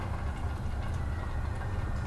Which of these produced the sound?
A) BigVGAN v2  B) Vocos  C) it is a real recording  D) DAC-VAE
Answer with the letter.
C